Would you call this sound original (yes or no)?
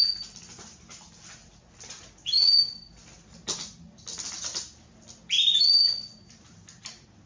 yes